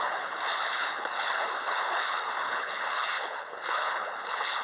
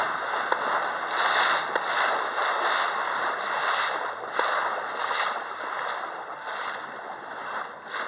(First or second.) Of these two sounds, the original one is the second